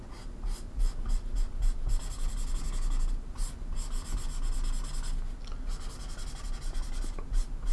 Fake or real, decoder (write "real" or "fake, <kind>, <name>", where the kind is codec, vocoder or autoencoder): real